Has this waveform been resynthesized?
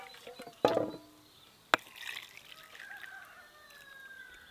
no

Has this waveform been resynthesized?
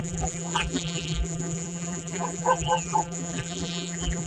yes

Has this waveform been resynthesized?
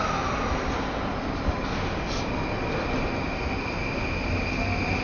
no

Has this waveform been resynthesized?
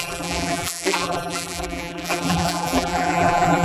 yes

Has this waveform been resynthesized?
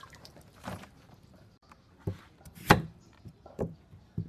yes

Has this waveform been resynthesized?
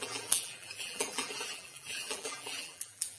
yes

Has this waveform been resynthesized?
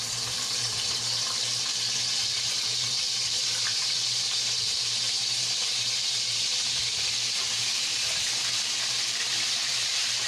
yes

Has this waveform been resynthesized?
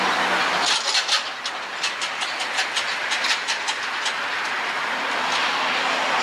no